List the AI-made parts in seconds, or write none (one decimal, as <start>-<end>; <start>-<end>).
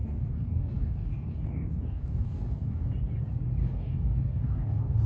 0.0-2.9; 3.6-5.1